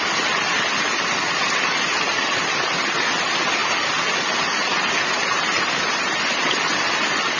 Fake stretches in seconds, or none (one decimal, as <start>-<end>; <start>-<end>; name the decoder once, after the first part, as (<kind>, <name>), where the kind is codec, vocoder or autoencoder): none

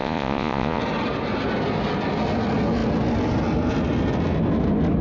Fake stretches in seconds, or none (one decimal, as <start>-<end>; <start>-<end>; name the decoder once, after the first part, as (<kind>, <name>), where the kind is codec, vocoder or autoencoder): 0.0-0.8 (vocoder, Vocos)

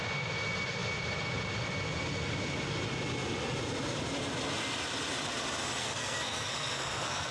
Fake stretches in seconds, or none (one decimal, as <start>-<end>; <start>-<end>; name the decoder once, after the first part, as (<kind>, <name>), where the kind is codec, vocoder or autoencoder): 5.8-7.3 (codec, SNAC)

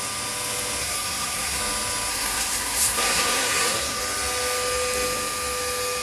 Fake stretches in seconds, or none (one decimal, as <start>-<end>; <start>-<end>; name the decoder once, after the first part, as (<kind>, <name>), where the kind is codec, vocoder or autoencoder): 0.8-1.6 (codec, SNAC); 2.1-4.0

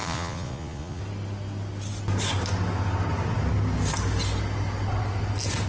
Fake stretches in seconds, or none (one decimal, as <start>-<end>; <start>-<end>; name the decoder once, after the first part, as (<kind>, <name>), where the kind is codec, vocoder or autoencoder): 0.0-1.0 (vocoder, Vocos)